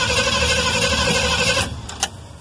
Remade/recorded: recorded